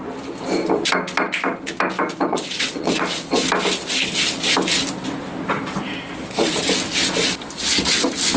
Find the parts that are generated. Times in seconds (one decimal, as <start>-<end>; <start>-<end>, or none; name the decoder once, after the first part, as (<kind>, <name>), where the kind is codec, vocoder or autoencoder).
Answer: 2.3-3.0 (vocoder, WaveNeXt)